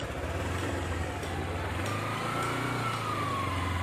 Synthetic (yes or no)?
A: no